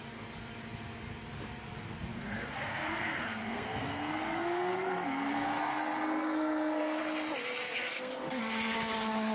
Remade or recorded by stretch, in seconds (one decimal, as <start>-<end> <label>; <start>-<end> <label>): 0.0-2.1 recorded; 2.1-7.0 remade; 7.0-7.6 recorded; 7.6-8.4 remade; 8.4-9.3 recorded